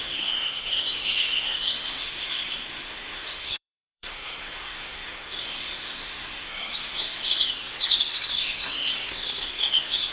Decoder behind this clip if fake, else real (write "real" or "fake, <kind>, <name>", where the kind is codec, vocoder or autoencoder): fake, codec, SNAC